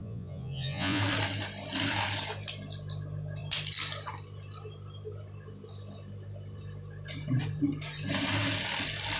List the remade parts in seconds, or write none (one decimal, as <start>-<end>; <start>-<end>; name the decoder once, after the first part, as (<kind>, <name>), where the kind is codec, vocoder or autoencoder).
0.0-1.0 (vocoder, Vocos)